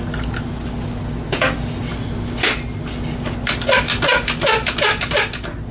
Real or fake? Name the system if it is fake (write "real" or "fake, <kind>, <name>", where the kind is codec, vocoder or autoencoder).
real